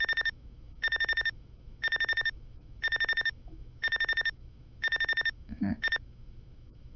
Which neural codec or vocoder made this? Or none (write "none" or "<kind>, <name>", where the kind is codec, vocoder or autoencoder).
autoencoder, DAC-VAE